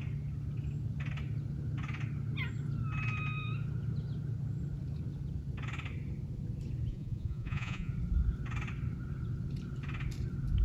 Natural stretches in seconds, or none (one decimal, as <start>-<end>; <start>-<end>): 0.0-6.9; 7.9-10.6